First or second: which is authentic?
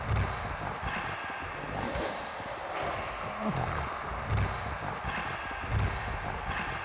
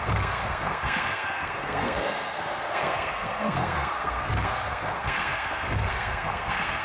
first